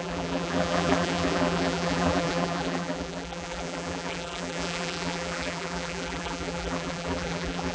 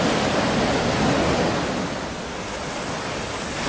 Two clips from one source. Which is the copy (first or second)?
first